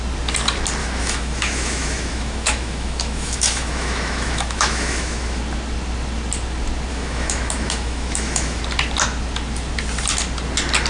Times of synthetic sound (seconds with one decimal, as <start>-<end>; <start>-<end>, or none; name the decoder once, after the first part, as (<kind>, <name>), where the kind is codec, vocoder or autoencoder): 0.8-5.4 (autoencoder, DAC-VAE); 6.9-8.6